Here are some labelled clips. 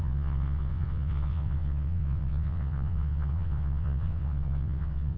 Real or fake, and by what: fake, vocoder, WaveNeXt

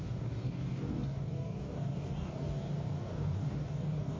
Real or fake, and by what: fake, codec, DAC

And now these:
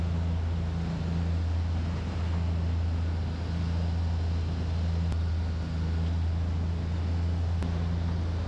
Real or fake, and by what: real